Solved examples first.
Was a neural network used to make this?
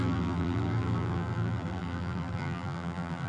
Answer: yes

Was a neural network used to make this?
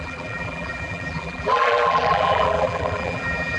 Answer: yes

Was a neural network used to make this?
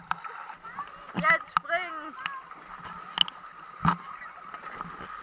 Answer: no